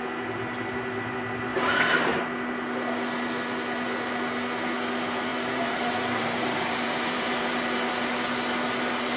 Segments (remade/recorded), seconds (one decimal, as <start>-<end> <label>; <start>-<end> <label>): 0.0-1.5 recorded; 1.5-2.2 remade; 2.2-5.3 recorded; 5.3-7.4 remade; 7.4-9.2 recorded